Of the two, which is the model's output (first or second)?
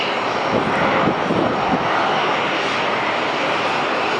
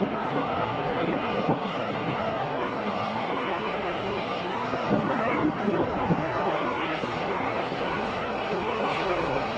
second